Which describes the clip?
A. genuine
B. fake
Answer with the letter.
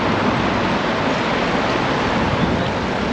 A